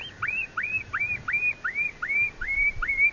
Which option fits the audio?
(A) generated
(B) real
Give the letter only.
B